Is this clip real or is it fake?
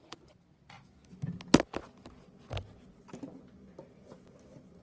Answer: real